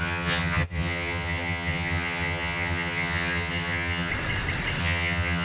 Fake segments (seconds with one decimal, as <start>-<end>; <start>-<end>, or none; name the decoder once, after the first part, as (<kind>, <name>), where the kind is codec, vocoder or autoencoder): 0.0-4.1 (vocoder, HiFi-GAN); 4.8-5.4